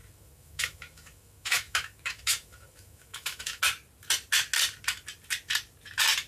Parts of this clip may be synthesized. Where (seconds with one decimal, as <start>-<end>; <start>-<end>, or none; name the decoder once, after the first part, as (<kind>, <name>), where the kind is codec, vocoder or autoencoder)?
0.0-3.6 (autoencoder, DAC-VAE)